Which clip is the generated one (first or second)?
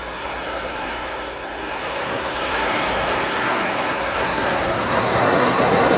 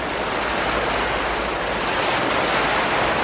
first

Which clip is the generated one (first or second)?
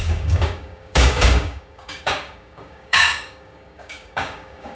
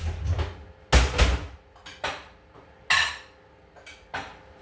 first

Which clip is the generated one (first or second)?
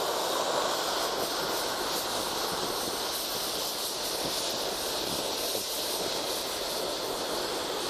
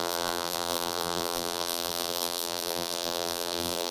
second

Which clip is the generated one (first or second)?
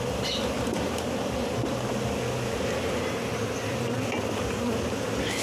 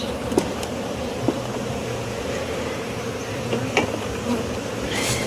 second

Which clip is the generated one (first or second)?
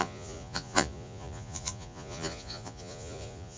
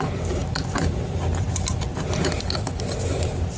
first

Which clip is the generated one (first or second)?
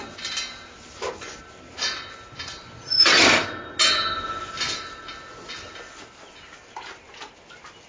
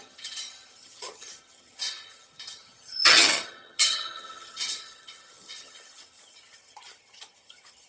second